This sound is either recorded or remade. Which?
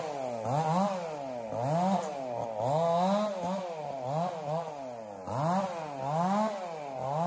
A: recorded